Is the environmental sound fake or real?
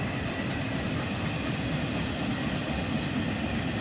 real